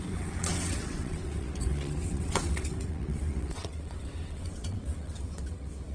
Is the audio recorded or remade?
remade